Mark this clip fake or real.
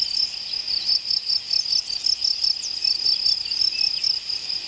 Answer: real